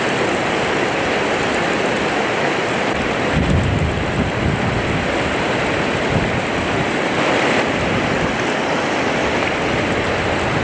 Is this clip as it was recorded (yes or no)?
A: yes